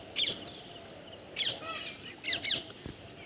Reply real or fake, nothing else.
real